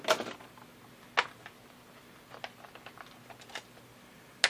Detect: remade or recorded recorded